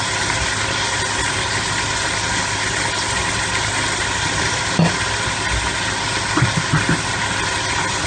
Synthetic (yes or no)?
no